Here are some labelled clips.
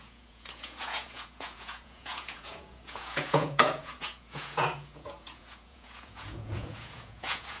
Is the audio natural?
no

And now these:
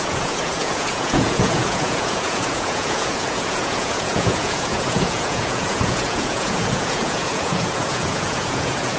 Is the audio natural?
no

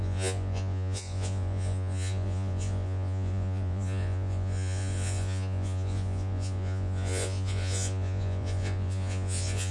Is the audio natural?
no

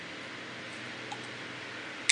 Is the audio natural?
yes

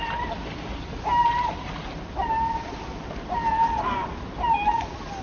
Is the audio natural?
yes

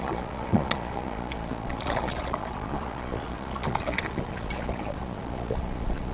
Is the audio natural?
no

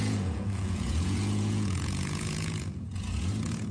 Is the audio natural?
no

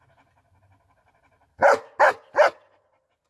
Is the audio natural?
yes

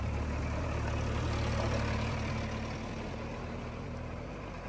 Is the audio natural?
yes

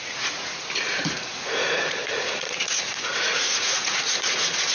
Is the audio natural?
no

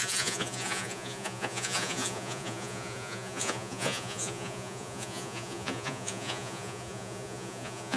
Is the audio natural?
no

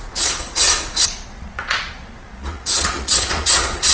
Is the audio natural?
no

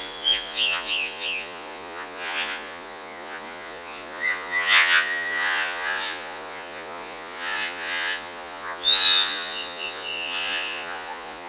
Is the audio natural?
no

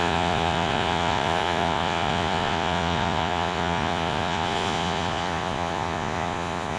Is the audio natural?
no